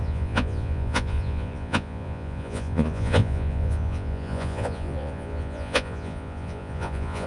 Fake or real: fake